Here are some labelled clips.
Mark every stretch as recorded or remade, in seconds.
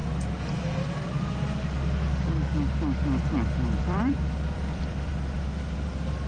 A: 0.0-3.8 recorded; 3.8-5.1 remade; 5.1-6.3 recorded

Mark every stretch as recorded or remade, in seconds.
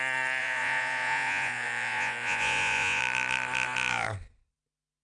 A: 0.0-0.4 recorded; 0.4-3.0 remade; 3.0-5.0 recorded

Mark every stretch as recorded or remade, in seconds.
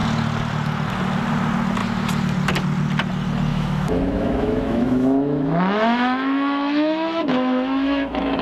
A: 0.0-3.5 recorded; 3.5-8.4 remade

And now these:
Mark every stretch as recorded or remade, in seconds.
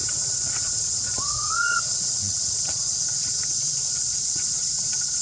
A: 0.0-5.2 remade